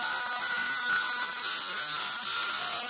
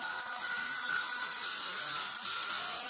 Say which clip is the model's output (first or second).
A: second